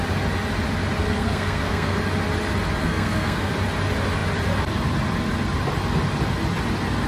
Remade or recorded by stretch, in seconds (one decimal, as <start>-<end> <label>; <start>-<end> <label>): 0.0-1.0 recorded; 1.0-2.0 remade; 2.0-2.8 recorded; 2.8-3.5 remade; 3.5-7.1 recorded